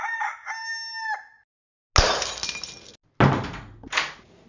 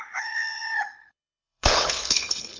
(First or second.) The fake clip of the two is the second